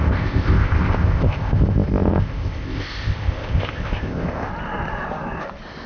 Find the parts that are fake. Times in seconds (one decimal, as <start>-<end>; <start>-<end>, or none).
0.0-4.5